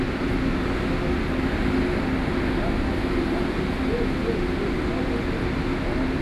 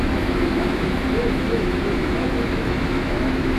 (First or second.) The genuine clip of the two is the first